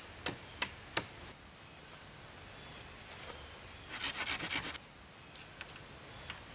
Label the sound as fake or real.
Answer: real